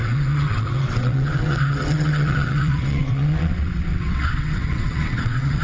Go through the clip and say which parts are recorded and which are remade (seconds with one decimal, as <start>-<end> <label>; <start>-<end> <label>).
0.0-5.6 remade